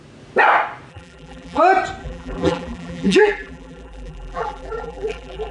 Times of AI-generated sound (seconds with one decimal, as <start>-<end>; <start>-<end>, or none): 0.9-1.6; 2.0-5.5